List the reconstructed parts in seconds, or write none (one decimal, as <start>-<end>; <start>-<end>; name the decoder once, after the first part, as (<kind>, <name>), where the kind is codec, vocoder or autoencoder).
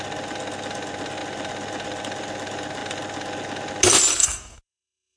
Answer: 4.2-5.2 (codec, DAC)